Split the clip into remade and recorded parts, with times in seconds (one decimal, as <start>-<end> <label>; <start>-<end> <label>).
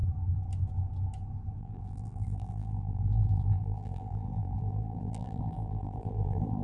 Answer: 0.0-1.6 recorded; 1.6-6.6 remade